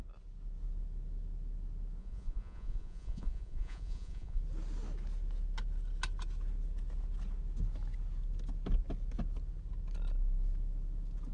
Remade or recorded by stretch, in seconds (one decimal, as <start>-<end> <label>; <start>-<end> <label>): 0.0-2.0 recorded; 2.0-4.4 remade; 4.4-11.3 recorded

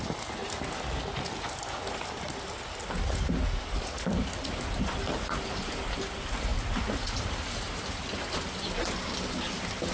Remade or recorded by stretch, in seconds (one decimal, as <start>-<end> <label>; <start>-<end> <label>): 0.0-9.9 recorded

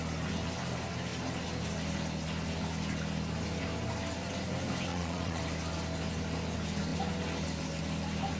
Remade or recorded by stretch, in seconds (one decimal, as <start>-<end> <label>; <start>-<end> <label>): 0.0-4.9 recorded; 4.9-5.4 remade; 5.4-8.4 recorded

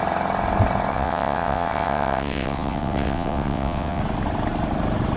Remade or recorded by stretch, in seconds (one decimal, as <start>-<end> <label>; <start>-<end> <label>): 0.0-0.9 recorded; 0.9-4.0 remade; 4.0-5.2 recorded